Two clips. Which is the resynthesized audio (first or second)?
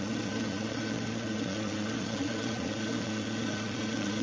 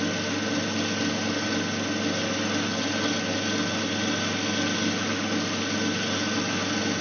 first